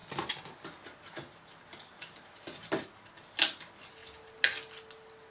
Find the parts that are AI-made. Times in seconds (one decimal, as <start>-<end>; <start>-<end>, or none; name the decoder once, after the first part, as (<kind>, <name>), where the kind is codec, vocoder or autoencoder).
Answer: none